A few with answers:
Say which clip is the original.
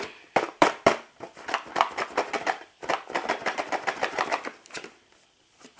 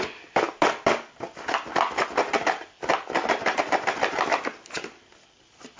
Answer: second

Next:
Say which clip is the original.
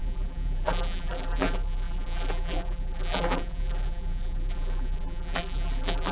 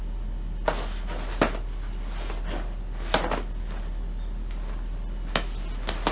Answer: second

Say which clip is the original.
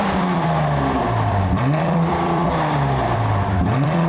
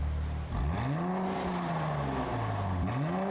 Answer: second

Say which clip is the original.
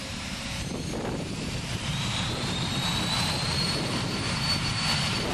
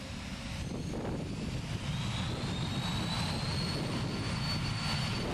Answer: second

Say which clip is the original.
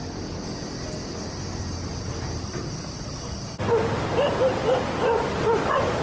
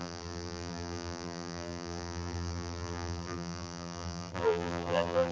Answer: first